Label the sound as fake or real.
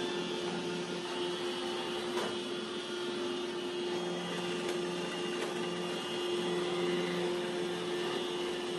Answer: real